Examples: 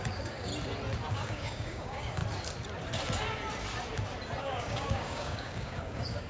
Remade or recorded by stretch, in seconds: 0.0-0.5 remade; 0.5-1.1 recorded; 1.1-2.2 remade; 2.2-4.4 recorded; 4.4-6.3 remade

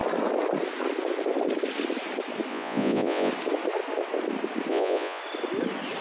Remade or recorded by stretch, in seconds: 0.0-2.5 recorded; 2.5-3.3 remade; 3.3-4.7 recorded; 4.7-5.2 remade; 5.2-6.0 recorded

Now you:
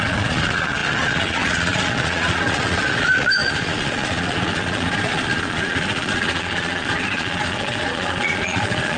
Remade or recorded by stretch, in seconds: 0.0-9.0 remade

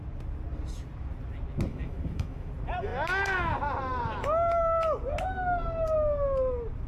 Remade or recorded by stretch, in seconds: 0.0-1.7 recorded; 1.7-2.5 remade; 2.5-6.9 recorded

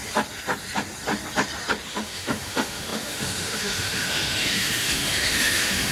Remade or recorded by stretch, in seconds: 0.0-1.9 recorded; 1.9-5.9 remade

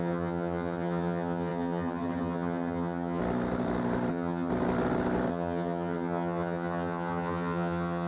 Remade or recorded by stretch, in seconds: 0.0-3.2 remade; 3.2-4.1 recorded; 4.1-4.5 remade; 4.5-5.3 recorded; 5.3-8.1 remade

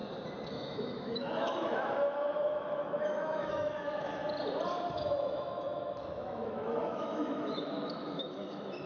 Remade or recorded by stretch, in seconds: 0.0-0.5 recorded; 0.5-4.2 remade; 4.2-4.9 recorded; 4.9-8.9 remade